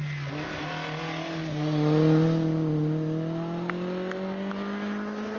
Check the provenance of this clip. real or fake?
real